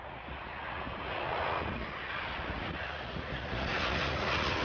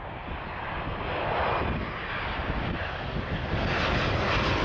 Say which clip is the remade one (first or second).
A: first